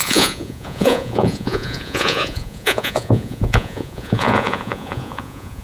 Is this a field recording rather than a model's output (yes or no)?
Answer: no